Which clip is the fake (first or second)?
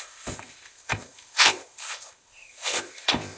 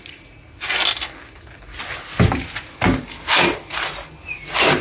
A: first